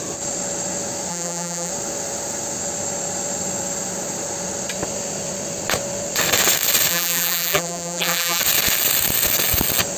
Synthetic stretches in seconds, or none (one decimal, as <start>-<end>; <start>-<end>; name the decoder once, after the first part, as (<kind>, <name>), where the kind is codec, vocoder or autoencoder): 1.1-1.7 (vocoder, BigVGAN v2); 6.9-8.4